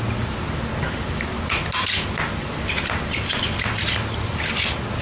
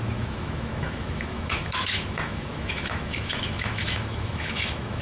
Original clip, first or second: first